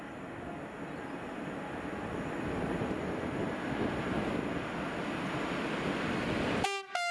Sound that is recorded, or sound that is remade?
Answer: recorded